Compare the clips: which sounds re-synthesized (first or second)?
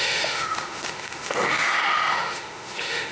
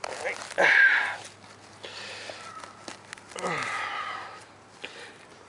first